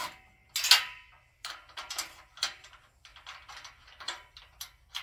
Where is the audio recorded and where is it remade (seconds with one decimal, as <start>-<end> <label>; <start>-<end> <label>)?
0.0-5.0 recorded